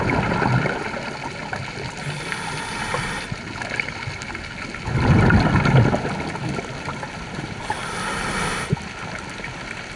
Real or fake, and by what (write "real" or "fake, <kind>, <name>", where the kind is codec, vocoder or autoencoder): real